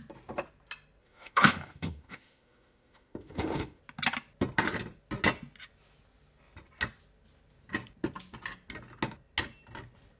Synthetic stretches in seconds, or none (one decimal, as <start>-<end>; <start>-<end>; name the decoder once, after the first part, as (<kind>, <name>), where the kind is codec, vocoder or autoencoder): 1.0-3.8 (autoencoder, DAC-VAE)